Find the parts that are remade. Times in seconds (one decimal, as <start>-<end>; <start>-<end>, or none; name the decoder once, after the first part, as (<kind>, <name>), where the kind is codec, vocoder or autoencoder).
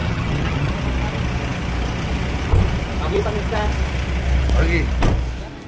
0.0-0.7 (vocoder, HiFi-GAN)